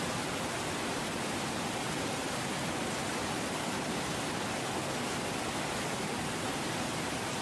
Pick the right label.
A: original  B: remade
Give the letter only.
A